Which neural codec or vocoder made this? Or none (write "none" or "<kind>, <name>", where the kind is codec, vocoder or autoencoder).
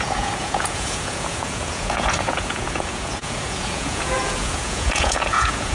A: vocoder, Vocos